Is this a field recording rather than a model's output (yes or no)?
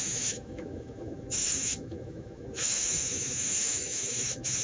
no